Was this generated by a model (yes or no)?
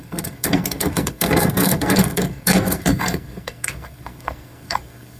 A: yes